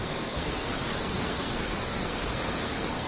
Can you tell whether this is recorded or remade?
remade